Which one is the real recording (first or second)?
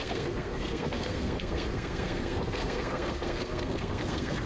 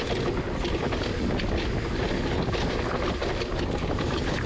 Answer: second